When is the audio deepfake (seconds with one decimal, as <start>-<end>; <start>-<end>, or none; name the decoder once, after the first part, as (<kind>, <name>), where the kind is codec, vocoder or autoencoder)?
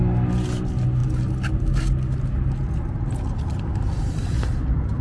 none